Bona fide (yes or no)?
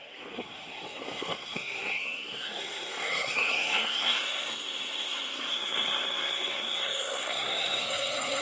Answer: no